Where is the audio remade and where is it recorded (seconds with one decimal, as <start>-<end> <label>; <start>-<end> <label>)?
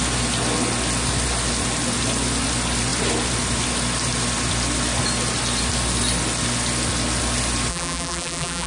0.0-7.7 recorded; 7.7-8.7 remade